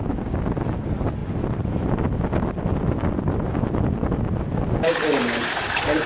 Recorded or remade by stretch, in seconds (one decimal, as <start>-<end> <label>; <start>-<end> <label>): 0.0-6.1 recorded